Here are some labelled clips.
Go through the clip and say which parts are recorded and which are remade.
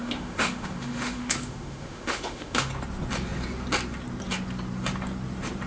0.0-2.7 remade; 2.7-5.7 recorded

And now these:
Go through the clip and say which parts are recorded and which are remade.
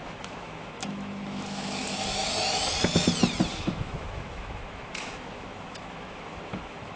0.0-1.8 remade; 1.8-3.5 recorded; 3.5-7.0 remade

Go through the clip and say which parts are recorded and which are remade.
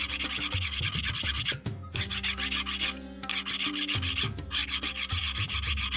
0.0-6.0 recorded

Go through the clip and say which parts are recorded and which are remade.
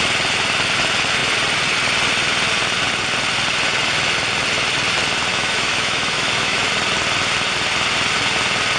0.0-5.3 recorded; 5.3-6.7 remade; 6.7-8.8 recorded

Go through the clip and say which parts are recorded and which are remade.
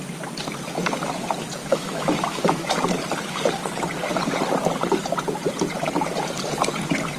0.0-1.6 recorded; 1.6-2.7 remade; 2.7-7.2 recorded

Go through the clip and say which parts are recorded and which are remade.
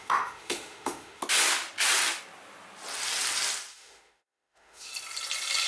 0.0-1.2 remade; 1.2-3.7 recorded; 3.7-4.9 remade; 4.9-5.7 recorded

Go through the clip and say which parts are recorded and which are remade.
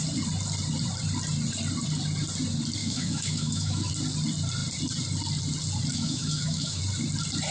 0.0-2.8 recorded; 2.8-3.9 remade; 3.9-5.9 recorded; 5.9-6.8 remade; 6.8-7.5 recorded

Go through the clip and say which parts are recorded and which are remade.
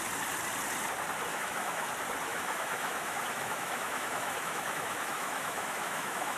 0.0-1.3 recorded; 1.3-1.9 remade; 1.9-2.3 recorded; 2.3-6.4 remade